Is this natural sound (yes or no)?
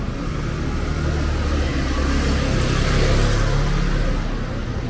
yes